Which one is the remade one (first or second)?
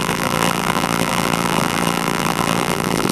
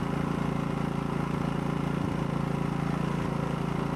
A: first